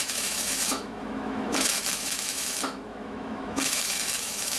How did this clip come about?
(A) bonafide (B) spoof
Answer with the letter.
B